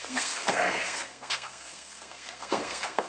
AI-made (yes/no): yes